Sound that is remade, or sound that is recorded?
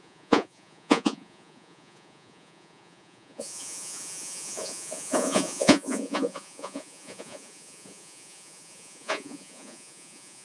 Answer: remade